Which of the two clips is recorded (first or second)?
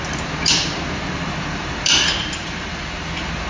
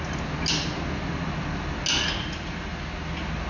second